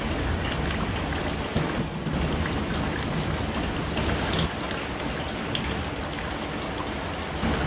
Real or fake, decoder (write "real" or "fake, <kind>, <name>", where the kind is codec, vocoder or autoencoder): real